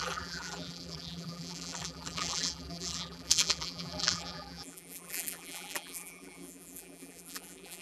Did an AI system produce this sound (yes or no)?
yes